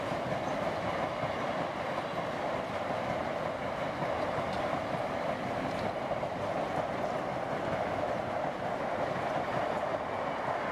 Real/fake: real